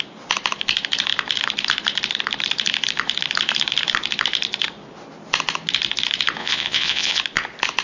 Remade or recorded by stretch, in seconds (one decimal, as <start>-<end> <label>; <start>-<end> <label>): 0.0-6.4 recorded; 6.4-7.2 remade; 7.2-7.8 recorded